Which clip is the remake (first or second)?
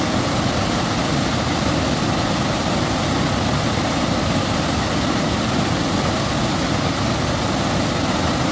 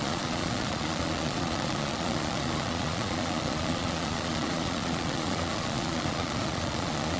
second